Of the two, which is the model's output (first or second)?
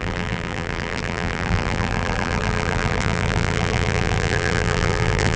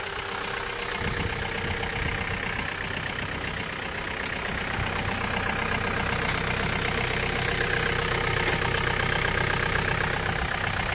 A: first